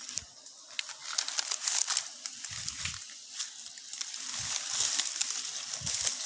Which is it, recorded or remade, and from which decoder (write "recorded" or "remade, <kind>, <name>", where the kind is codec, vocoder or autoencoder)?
recorded